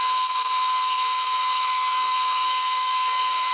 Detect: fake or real fake